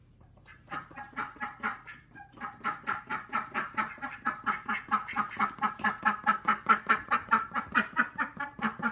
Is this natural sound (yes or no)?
no